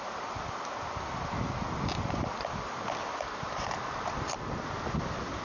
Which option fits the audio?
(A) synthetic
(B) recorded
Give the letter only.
B